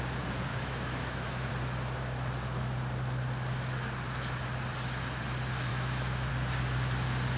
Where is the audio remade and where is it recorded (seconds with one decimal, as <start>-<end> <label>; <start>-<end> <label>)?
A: 0.0-0.5 recorded; 0.5-1.5 remade; 1.5-5.7 recorded; 5.7-6.3 remade; 6.3-7.4 recorded